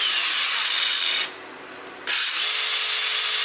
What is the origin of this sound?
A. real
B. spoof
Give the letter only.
A